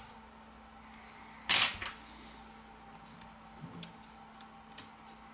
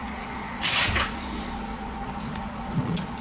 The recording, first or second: first